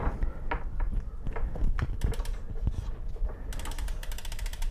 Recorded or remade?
recorded